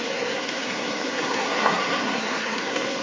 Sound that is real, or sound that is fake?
fake